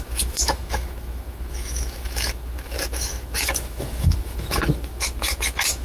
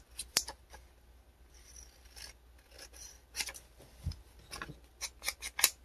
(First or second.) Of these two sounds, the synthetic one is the first